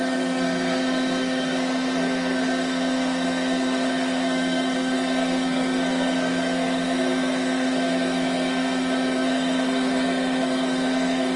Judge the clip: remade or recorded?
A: remade